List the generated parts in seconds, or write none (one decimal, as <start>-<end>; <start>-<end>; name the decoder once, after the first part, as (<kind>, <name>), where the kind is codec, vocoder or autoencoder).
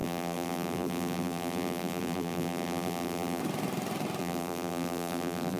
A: 0.0-3.4 (vocoder, BigVGAN v2); 4.2-5.6